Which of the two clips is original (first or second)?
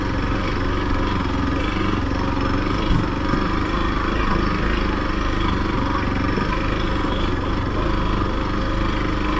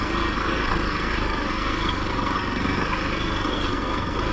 first